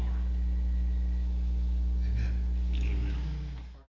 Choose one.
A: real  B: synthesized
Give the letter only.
A